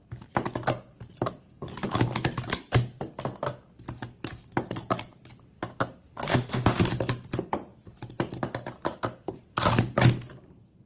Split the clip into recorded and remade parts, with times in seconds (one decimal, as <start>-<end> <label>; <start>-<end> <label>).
0.0-6.3 recorded; 6.3-6.8 remade; 6.8-10.9 recorded

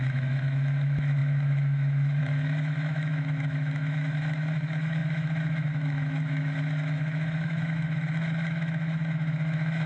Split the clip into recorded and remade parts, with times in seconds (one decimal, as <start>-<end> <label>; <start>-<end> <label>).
0.0-9.9 remade

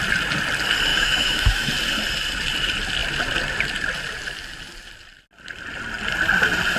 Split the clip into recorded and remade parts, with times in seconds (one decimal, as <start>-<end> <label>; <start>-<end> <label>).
0.0-0.9 recorded; 0.9-1.7 remade; 1.7-6.8 recorded